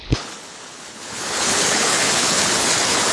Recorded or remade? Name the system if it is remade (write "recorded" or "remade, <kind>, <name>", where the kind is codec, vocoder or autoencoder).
remade, codec, HILCodec